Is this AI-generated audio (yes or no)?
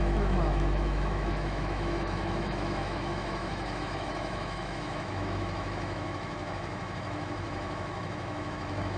yes